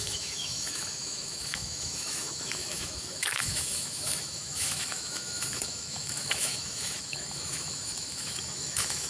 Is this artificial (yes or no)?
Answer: yes